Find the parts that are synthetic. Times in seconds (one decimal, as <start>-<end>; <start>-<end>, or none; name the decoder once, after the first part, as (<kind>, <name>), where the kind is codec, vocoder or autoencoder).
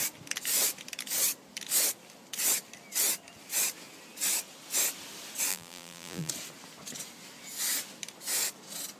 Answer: 5.5-6.3 (vocoder, BigVGAN v2)